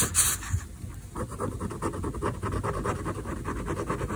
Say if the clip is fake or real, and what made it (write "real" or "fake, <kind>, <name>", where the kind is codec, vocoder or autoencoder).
real